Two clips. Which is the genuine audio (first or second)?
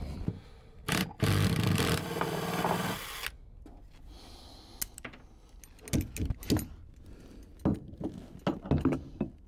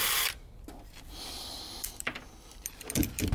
first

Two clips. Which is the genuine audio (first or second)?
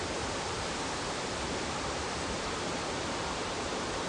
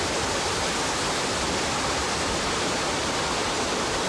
second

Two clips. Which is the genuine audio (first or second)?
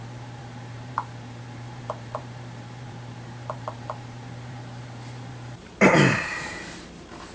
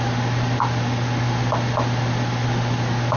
second